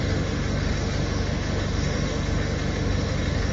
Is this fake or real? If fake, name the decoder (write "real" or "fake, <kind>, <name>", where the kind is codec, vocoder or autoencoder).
fake, autoencoder, DAC-VAE